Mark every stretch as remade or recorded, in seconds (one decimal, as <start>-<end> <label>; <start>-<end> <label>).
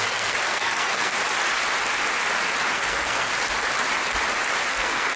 0.0-1.2 remade; 1.2-2.7 recorded; 2.7-3.3 remade; 3.3-4.7 recorded; 4.7-5.2 remade